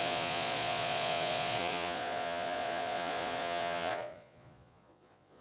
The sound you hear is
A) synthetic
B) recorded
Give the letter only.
A